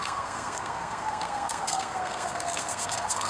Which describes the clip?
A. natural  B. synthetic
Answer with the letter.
B